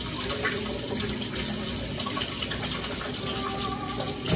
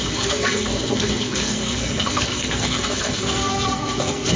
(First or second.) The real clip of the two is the first